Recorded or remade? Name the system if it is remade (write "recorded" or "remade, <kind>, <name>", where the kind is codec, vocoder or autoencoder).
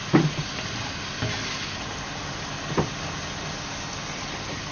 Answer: recorded